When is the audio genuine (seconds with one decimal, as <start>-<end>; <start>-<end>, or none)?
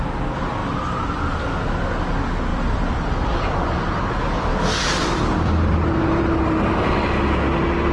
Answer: 0.0-0.6; 1.4-2.5; 3.7-4.5; 6.2-7.9